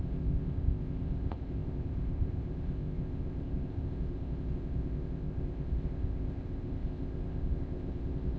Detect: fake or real fake